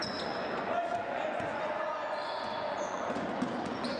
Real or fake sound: fake